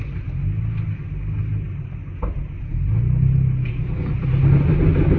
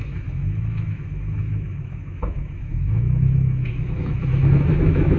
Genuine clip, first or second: first